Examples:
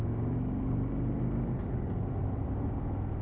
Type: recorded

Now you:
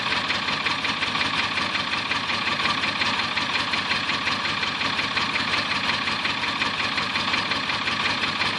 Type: recorded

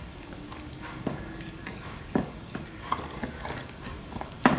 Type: remade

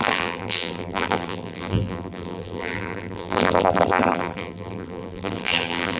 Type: remade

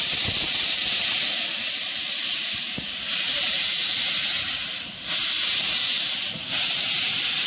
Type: remade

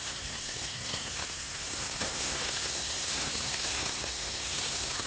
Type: remade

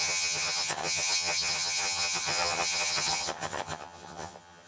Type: remade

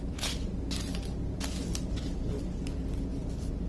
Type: recorded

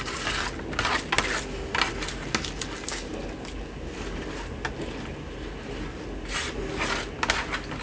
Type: recorded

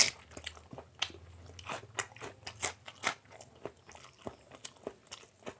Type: recorded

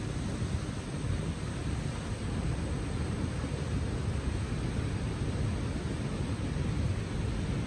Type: recorded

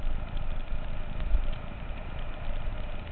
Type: recorded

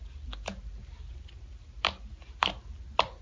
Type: recorded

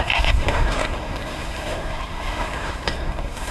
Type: remade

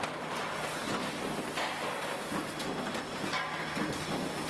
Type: recorded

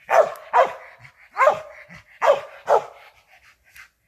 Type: recorded